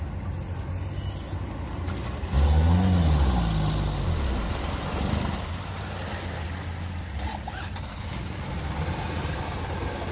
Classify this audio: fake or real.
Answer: real